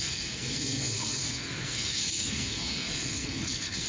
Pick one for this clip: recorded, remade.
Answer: remade